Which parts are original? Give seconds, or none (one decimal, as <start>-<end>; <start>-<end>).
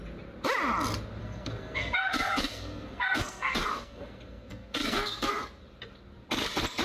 0.0-1.2; 5.3-6.8